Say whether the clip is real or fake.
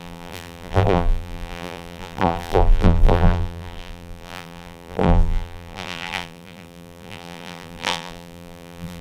fake